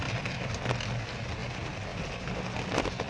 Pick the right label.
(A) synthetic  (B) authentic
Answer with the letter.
A